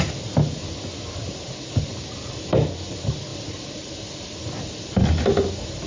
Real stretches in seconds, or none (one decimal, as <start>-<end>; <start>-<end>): 0.0-5.9